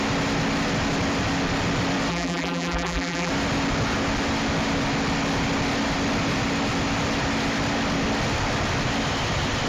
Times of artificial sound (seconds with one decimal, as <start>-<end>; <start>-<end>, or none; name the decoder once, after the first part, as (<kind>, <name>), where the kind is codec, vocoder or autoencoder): 2.1-3.3 (vocoder, BigVGAN v2)